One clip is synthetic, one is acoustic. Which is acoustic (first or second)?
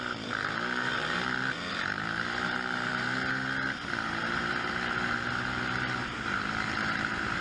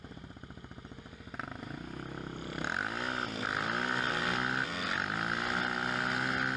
second